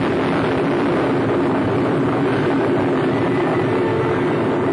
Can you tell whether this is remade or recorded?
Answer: recorded